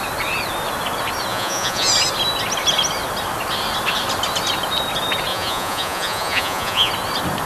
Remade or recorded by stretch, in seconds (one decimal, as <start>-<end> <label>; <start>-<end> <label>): 0.0-1.3 recorded; 1.3-1.9 remade; 1.9-5.3 recorded; 5.3-6.9 remade; 6.9-7.5 recorded